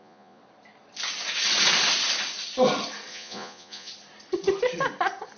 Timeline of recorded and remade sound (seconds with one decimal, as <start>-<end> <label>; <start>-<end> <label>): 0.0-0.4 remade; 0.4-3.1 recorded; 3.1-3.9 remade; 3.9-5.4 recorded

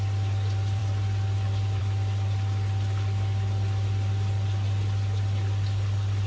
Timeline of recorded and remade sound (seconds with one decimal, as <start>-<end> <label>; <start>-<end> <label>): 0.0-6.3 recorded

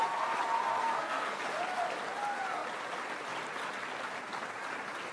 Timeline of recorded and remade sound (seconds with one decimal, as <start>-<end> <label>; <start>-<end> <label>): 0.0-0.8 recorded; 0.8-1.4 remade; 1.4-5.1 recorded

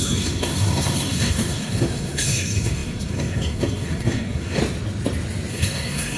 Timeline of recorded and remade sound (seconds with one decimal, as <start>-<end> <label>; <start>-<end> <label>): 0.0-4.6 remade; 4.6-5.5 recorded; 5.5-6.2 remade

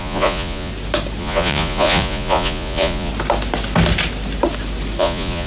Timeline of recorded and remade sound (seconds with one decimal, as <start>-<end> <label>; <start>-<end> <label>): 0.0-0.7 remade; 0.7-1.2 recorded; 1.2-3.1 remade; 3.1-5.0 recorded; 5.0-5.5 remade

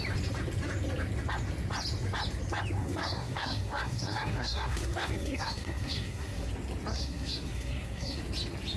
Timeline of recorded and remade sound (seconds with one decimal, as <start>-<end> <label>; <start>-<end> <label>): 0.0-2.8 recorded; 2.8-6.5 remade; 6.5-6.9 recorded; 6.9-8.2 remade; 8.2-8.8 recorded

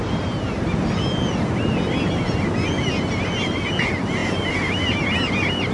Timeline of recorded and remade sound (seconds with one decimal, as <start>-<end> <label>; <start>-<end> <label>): 0.0-4.2 recorded; 4.2-5.7 remade

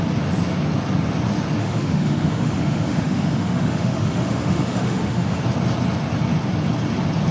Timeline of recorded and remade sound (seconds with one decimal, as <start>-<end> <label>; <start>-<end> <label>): 0.0-1.6 recorded; 1.6-5.4 remade; 5.4-7.3 recorded